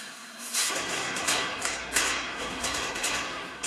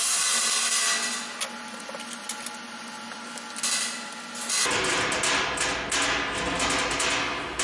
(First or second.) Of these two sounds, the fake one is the first